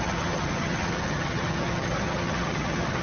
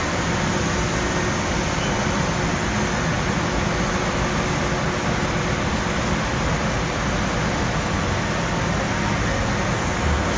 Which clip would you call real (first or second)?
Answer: second